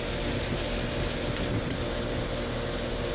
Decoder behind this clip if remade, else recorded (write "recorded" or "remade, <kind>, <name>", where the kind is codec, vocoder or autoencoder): recorded